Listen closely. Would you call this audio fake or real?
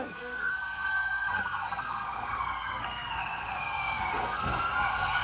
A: fake